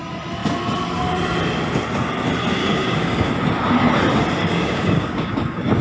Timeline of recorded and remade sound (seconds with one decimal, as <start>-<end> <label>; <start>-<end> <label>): 0.0-2.6 recorded; 2.6-3.3 remade; 3.3-4.4 recorded; 4.4-5.8 remade